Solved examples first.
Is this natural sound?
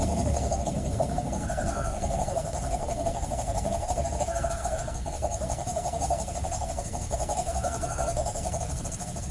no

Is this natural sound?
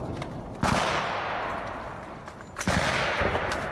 yes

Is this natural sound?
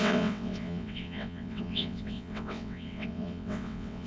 no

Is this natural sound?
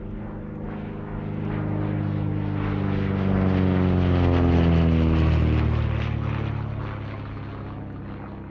yes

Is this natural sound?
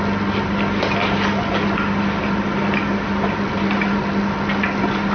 yes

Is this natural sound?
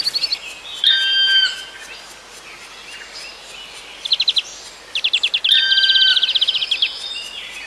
yes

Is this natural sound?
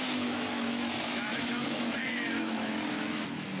no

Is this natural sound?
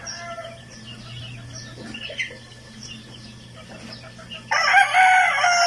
yes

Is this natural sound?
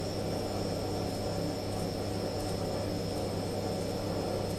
yes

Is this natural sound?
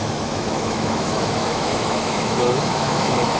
no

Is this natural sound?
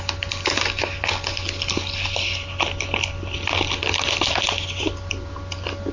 yes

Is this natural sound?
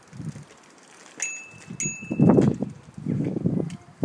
yes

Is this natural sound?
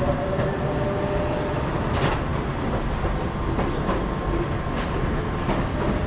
yes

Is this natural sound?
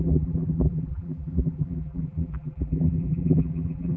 no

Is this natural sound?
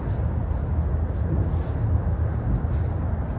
yes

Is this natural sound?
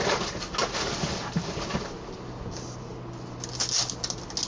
yes